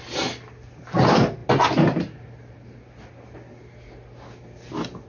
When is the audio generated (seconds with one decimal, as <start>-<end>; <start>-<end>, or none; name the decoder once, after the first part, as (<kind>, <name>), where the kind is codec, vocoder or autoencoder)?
none